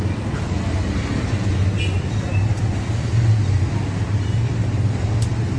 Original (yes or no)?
yes